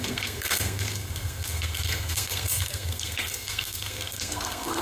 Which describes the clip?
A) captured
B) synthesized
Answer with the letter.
B